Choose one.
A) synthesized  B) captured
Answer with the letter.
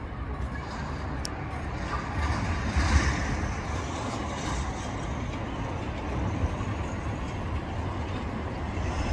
B